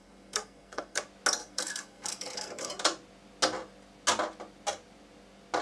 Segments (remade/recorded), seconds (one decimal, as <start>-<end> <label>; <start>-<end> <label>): 0.0-1.0 remade; 1.0-1.4 recorded; 1.4-2.7 remade; 2.7-5.6 recorded